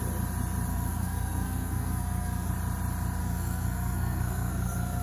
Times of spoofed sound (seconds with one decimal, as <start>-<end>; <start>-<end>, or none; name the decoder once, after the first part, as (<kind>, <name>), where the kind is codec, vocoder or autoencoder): 0.7-2.5 (codec, SNAC); 3.2-5.0